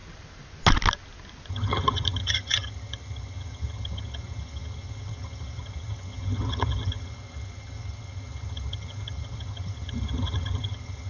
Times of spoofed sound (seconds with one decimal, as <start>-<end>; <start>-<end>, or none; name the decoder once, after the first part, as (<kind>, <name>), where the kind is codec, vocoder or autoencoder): 1.5-11.1 (vocoder, HiFi-GAN)